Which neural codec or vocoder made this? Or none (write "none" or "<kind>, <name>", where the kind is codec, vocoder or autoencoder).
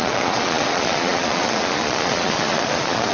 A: vocoder, Vocos